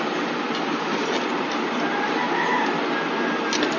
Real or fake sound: real